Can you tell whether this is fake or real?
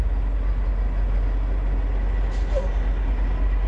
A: real